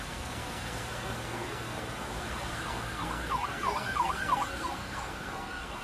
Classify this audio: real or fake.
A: fake